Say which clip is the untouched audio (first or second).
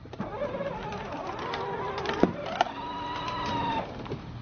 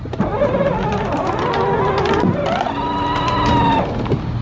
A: second